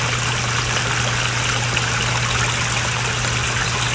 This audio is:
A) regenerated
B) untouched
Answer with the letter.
B